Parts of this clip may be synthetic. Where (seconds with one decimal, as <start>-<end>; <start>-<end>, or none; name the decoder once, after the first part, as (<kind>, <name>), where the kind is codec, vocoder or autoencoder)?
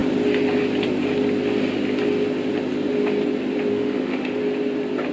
3.7-4.4 (autoencoder, DAC-VAE)